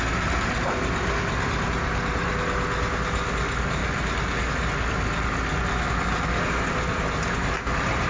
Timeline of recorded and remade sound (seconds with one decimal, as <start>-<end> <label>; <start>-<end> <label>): 0.0-3.8 recorded; 3.8-4.5 remade; 4.5-8.1 recorded